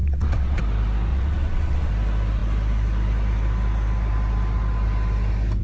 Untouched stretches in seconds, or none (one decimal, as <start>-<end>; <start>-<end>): 0.6-1.1; 1.9-5.6